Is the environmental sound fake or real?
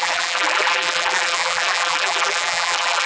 fake